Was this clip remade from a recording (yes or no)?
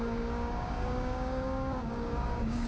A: yes